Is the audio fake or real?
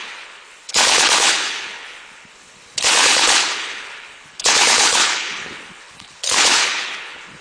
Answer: fake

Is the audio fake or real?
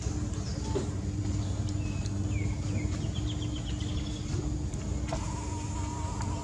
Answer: real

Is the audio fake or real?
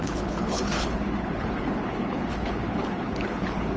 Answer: fake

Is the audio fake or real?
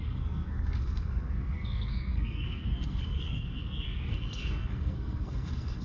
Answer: fake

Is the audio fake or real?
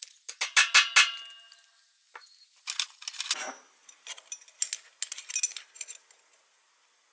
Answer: real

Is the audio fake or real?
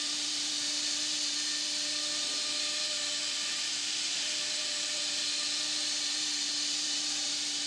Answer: fake